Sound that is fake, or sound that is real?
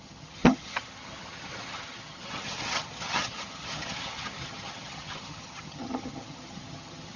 fake